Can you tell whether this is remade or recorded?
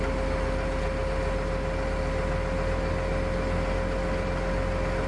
recorded